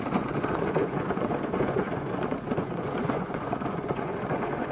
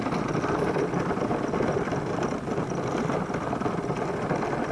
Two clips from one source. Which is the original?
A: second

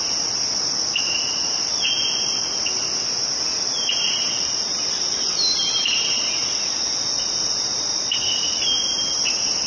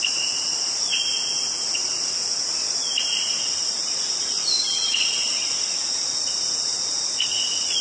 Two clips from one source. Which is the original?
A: first